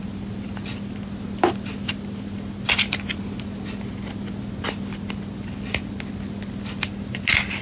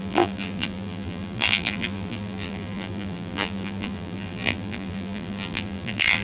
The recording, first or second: first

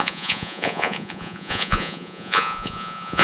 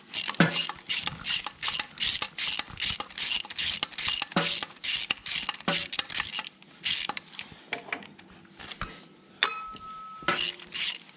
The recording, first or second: second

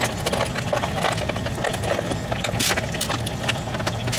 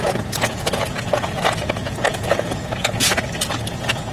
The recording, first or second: first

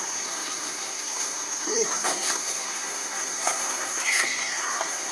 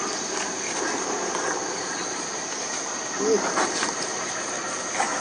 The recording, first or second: second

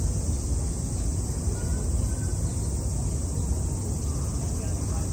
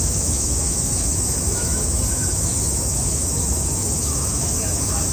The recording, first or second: first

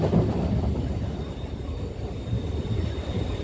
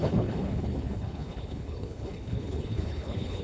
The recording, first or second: first